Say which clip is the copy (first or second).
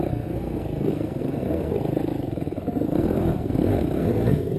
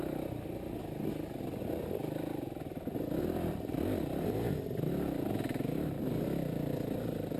first